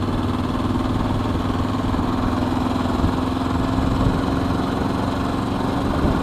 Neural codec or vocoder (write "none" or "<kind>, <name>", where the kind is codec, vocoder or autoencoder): none